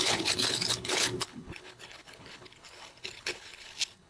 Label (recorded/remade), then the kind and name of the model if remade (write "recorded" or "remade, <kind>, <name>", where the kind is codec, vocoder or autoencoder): remade, codec, HILCodec